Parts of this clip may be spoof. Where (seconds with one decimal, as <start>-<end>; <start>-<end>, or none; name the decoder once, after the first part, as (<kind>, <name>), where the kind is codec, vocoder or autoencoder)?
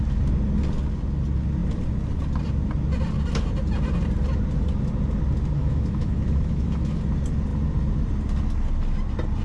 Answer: 5.6-7.0 (autoencoder, DAC-VAE)